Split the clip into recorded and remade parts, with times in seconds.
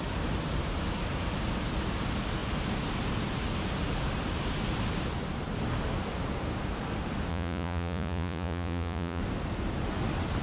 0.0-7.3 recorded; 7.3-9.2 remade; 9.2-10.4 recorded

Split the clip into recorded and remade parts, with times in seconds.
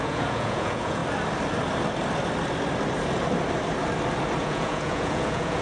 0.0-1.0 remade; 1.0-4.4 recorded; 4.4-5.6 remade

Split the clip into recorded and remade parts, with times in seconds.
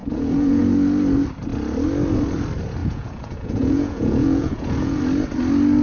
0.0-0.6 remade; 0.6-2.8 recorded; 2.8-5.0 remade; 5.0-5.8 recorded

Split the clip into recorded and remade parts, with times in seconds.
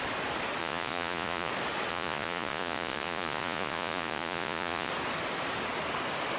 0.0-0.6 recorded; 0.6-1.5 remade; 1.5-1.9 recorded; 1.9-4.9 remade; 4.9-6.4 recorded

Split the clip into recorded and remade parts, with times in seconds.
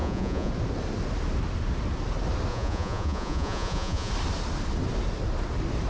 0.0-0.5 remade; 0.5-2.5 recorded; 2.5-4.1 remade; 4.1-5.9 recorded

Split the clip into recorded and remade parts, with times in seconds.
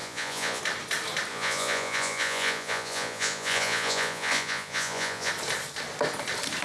0.0-0.6 remade; 0.6-1.3 recorded; 1.3-5.3 remade; 5.3-6.6 recorded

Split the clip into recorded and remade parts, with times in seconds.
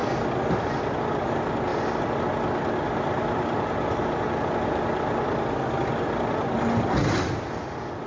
0.0-8.1 recorded